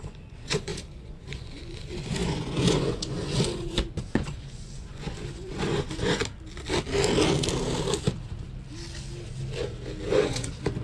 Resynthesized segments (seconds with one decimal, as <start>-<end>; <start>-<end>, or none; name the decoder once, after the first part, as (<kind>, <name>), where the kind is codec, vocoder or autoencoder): 0.0-6.2 (vocoder, Vocos); 10.1-10.8

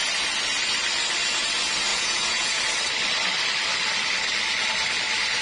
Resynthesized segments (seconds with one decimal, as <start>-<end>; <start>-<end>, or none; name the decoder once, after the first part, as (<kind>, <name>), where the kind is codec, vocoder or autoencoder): 1.9-2.6 (vocoder, Vocos)

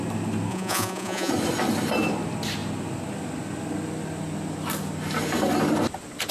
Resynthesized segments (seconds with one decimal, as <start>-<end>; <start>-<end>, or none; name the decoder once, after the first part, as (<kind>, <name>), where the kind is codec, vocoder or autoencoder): 0.5-1.3 (vocoder, Vocos)

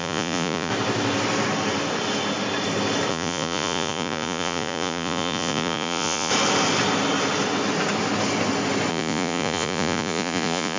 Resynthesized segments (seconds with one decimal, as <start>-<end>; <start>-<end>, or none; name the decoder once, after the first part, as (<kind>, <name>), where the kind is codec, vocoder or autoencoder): 0.0-0.7 (vocoder, Vocos); 3.1-6.3; 8.9-10.8

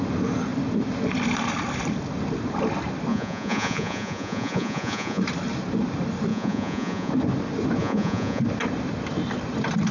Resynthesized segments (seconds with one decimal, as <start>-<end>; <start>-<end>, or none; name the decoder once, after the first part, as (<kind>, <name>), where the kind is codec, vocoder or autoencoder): 3.1-5.2 (vocoder, Vocos); 6.3-7.1; 7.8-8.4

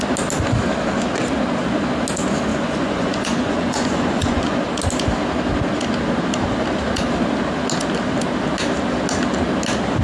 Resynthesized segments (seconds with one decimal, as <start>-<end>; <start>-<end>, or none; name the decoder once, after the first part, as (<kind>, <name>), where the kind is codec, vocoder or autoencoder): 2.5-4.6 (vocoder, Vocos)

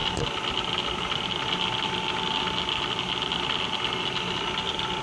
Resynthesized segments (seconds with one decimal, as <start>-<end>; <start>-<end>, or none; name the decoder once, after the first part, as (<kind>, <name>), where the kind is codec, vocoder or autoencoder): none

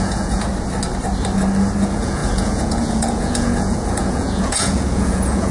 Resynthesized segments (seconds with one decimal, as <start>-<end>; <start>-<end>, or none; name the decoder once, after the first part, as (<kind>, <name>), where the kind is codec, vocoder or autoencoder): 0.0-0.5 (vocoder, Vocos); 1.8-5.5